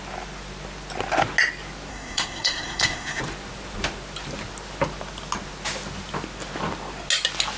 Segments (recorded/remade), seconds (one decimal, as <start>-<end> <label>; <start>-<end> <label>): 0.0-1.9 recorded; 1.9-3.2 remade; 3.2-7.6 recorded